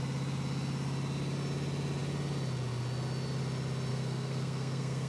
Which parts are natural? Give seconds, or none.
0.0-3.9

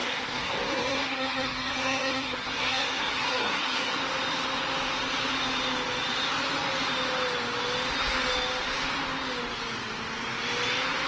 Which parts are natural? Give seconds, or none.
4.0-11.1